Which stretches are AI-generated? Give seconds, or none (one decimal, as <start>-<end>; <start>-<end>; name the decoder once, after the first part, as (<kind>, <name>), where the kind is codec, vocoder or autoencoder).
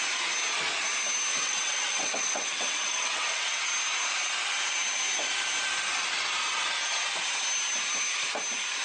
1.3-3.6 (vocoder, WaveNeXt)